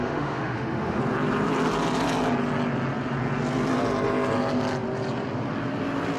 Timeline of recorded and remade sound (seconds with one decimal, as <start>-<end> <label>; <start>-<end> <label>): 0.0-1.0 remade; 1.0-6.2 recorded